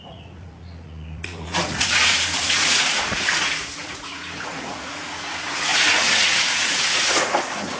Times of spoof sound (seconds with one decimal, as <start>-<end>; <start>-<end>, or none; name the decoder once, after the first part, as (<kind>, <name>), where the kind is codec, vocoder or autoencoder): 0.0-7.8 (vocoder, Vocos)